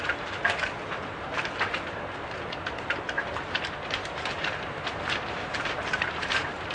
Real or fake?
fake